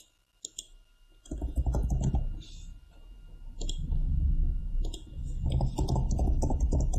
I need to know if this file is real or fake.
real